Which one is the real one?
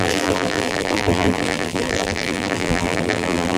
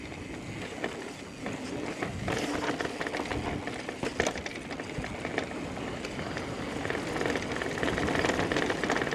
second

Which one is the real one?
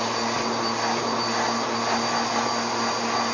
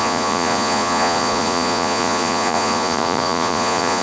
first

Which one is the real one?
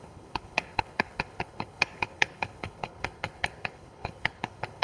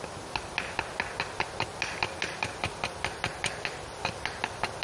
second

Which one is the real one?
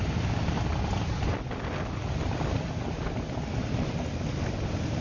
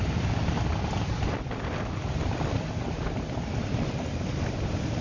first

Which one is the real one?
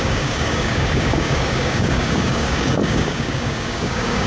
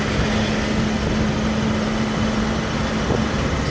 second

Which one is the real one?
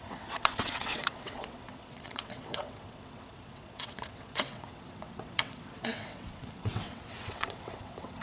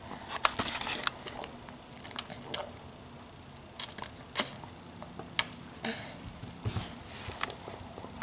second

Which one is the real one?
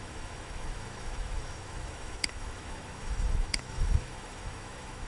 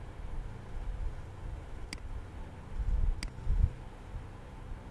second